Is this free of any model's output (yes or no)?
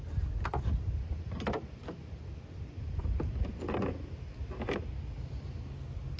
yes